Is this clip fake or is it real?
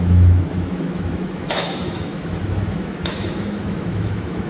fake